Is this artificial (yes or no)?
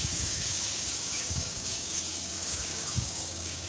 yes